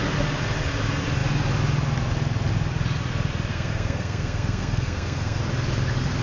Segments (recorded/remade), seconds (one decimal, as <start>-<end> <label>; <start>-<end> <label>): 0.0-3.5 recorded; 3.5-5.4 remade; 5.4-6.2 recorded